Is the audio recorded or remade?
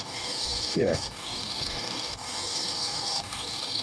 remade